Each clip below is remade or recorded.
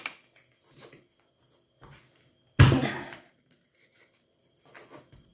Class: recorded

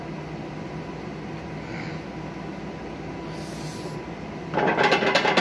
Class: recorded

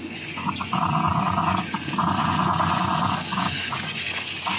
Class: remade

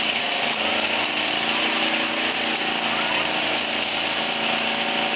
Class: recorded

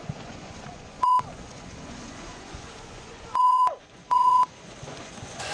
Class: remade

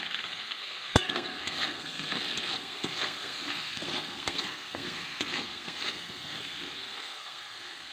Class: remade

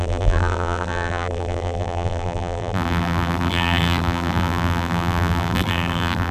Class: remade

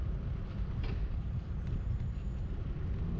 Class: remade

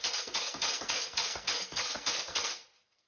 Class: remade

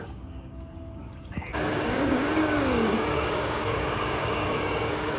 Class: remade